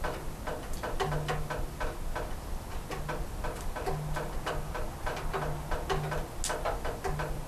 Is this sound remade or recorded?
recorded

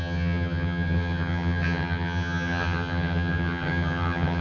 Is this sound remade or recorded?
remade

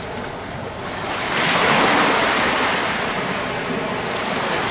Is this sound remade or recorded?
recorded